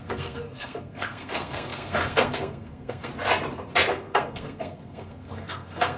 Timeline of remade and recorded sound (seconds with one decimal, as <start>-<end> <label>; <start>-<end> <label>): 0.0-3.1 remade; 3.1-3.9 recorded; 3.9-6.0 remade